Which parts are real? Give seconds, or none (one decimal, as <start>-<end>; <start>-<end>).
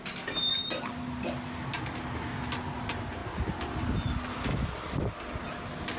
0.0-6.0